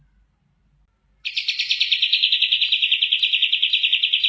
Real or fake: real